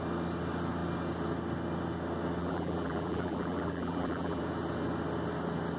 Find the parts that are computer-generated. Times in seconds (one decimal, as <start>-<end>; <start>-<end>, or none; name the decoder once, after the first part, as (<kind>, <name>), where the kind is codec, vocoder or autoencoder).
2.4-4.4 (vocoder, BigVGAN v2)